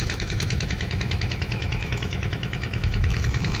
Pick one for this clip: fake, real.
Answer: fake